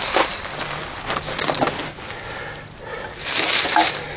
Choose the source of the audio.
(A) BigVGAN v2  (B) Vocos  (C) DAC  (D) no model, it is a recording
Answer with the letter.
D